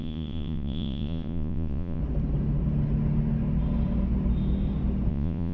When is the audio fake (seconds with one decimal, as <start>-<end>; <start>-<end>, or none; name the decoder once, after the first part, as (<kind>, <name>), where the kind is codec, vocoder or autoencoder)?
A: 0.0-2.0 (vocoder, Vocos); 5.1-5.5